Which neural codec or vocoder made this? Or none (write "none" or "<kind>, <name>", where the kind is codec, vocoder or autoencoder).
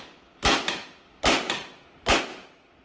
none